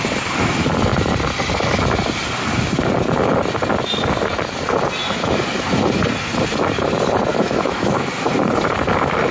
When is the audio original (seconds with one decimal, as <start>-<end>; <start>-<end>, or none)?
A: 0.0-7.3; 8.1-9.3